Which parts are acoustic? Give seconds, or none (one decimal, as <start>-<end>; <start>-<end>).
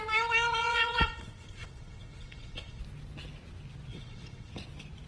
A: 0.0-0.6; 2.8-3.9; 4.5-5.1